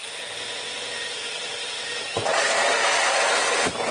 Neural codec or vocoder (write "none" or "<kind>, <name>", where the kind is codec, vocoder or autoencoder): none